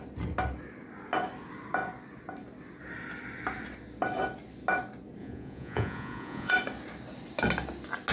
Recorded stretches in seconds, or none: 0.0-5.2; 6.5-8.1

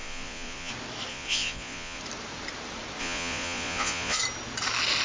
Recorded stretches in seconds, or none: 0.7-1.1; 2.0-3.0; 4.2-5.0

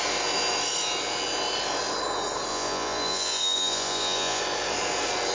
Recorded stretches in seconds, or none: 0.0-2.5; 4.4-5.3

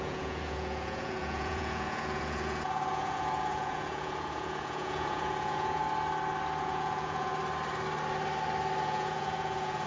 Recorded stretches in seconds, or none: 5.8-6.6; 7.3-8.8

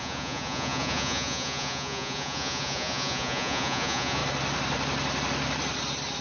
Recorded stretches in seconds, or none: 4.2-6.2

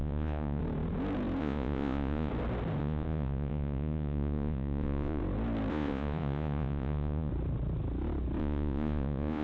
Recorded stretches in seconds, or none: 0.6-1.4; 2.3-2.8; 5.2-5.7; 7.3-8.4